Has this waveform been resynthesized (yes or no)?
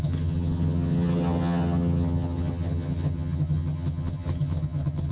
yes